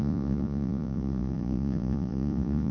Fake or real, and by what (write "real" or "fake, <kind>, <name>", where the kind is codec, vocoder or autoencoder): fake, vocoder, Vocos